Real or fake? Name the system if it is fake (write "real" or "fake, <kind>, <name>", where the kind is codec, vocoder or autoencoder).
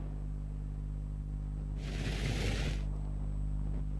real